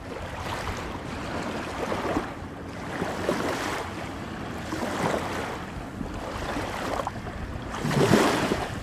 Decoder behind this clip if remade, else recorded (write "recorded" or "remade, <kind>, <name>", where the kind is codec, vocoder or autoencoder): recorded